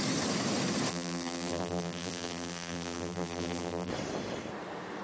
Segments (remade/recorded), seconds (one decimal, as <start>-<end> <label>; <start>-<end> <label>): 0.0-0.9 recorded; 0.9-3.9 remade; 3.9-5.0 recorded